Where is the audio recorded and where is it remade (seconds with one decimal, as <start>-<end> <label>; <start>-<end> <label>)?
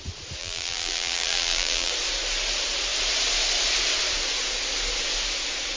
0.0-0.4 recorded; 0.4-1.9 remade; 1.9-5.8 recorded